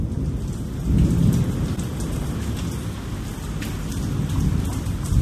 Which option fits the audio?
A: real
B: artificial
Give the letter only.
A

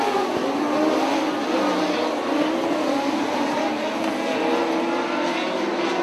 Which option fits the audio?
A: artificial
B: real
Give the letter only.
B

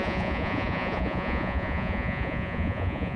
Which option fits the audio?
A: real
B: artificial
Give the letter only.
B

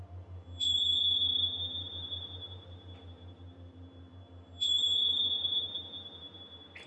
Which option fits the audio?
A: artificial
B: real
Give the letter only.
A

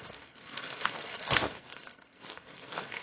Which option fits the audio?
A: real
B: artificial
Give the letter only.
B